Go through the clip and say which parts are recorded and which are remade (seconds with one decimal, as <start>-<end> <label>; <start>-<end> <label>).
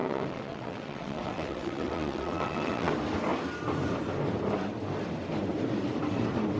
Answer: 0.0-2.9 remade; 2.9-6.6 recorded